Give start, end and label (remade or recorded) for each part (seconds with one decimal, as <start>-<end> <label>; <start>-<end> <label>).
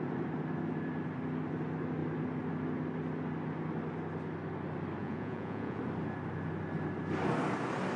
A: 0.0-5.0 recorded; 5.0-5.8 remade; 5.8-8.0 recorded